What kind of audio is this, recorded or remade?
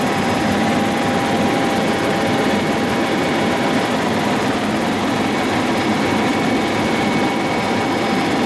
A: remade